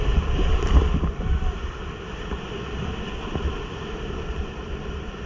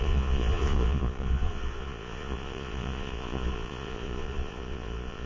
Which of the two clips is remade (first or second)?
second